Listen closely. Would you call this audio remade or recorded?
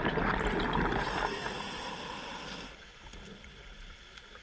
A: recorded